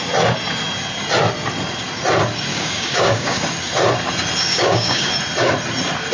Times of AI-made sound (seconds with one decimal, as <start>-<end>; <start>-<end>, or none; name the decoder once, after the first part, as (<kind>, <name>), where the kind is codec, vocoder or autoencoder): 2.5-3.4 (codec, DAC); 4.5-5.1

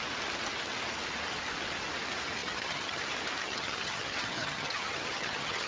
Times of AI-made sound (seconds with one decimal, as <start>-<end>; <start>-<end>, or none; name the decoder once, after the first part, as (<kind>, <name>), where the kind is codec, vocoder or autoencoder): 2.4-3.0 (vocoder, HiFi-GAN); 3.4-5.7